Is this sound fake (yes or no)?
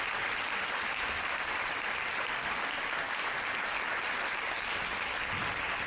no